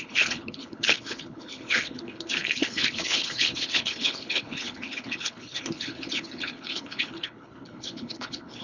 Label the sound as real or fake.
fake